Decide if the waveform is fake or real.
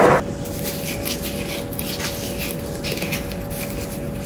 real